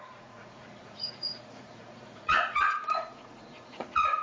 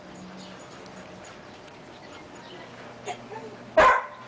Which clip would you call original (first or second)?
second